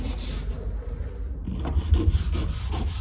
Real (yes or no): yes